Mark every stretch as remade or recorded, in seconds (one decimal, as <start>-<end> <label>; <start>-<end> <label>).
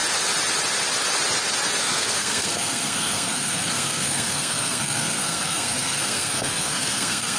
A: 0.0-1.8 recorded; 1.8-7.4 remade